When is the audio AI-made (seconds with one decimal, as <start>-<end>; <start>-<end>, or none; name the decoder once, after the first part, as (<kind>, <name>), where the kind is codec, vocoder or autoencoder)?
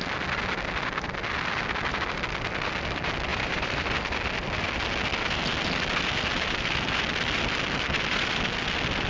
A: 3.3-4.0 (vocoder, BigVGAN v2)